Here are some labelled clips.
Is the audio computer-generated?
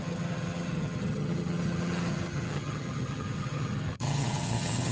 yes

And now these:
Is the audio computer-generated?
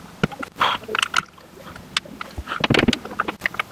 no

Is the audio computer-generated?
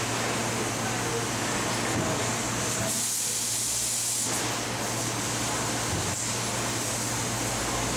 no